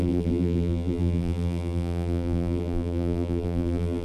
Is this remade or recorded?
remade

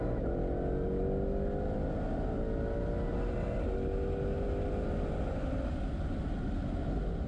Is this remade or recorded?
recorded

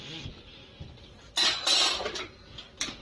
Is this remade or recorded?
recorded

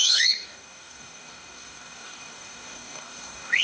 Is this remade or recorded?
remade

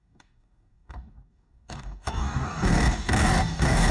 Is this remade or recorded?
remade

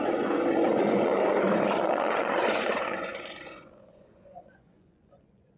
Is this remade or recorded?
remade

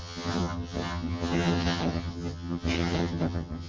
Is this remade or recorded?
remade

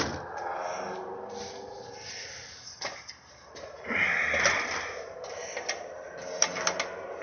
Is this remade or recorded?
recorded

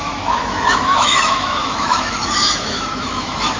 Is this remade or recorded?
remade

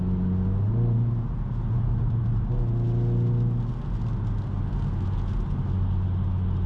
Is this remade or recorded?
recorded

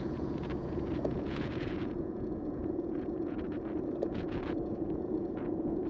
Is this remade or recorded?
remade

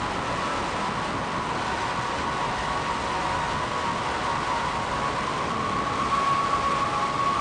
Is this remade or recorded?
recorded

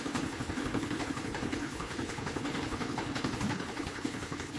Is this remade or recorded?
remade